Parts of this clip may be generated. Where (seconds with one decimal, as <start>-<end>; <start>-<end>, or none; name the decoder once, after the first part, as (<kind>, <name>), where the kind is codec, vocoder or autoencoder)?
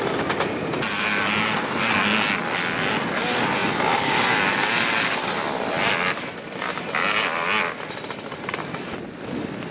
none